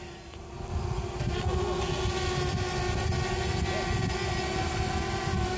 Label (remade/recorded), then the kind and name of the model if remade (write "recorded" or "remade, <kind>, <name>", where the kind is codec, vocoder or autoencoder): recorded